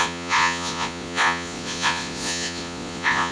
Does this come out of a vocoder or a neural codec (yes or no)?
yes